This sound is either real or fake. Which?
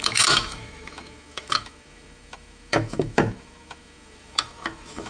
fake